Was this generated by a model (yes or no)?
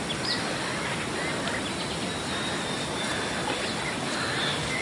no